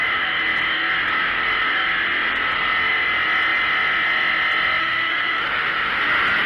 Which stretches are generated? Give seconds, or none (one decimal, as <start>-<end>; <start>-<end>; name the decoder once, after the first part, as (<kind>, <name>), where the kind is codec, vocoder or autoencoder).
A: 4.8-6.0 (autoencoder, DAC-VAE)